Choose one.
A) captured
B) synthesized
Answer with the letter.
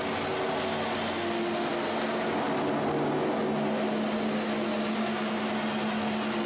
A